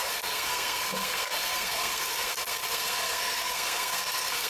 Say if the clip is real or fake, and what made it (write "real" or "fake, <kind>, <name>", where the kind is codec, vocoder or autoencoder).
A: fake, codec, SNAC